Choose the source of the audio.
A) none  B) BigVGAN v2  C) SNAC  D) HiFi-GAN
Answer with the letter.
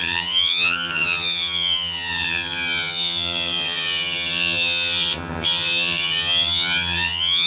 D